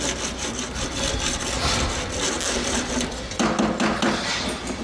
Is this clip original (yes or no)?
yes